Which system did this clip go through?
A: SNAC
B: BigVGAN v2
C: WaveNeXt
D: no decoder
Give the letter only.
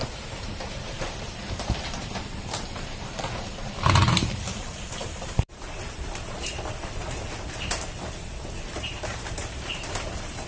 B